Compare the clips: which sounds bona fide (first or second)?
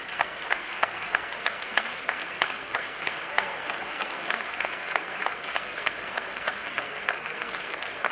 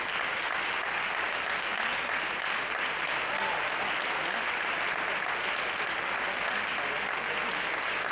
second